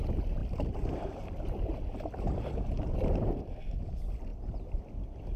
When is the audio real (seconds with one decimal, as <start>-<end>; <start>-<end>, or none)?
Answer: 0.0-5.4